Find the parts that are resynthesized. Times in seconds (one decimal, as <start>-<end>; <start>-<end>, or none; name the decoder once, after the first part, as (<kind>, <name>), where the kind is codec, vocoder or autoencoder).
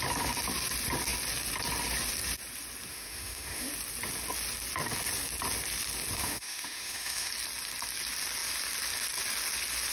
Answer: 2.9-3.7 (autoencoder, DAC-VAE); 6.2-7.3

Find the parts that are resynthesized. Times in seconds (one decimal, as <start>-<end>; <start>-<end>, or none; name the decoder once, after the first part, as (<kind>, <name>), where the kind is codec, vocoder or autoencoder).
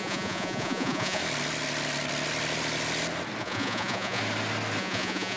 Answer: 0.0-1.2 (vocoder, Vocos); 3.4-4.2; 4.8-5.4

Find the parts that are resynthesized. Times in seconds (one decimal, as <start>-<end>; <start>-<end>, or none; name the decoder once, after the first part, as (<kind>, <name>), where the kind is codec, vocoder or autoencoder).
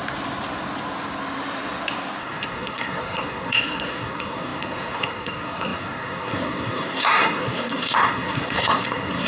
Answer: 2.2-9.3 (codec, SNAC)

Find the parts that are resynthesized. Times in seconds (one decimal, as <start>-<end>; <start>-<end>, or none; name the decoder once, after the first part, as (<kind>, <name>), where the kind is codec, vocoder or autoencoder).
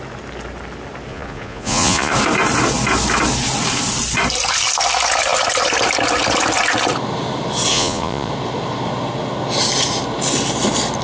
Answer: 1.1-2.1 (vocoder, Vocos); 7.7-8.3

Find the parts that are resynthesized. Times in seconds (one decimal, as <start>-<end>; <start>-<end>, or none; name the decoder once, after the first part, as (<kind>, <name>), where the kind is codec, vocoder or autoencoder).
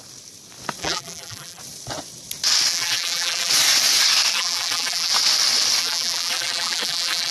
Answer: 0.8-1.6 (vocoder, BigVGAN v2); 2.7-3.5; 4.3-5.1; 5.8-7.3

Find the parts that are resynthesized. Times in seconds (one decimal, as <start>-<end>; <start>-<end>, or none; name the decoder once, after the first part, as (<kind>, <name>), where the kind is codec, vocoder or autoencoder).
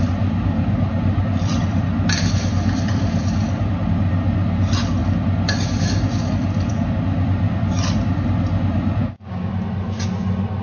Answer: 9.0-9.5 (codec, DAC)